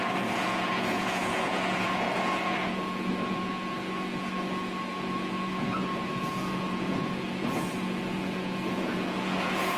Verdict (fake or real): fake